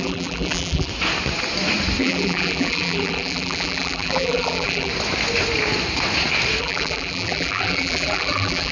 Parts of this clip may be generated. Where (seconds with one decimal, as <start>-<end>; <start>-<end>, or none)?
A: 0.0-0.9; 2.0-4.9; 6.6-8.7